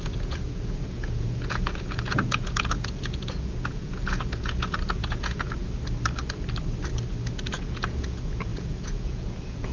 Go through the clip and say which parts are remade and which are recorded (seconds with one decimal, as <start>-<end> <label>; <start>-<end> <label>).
0.0-5.6 remade; 5.6-7.5 recorded; 7.5-9.7 remade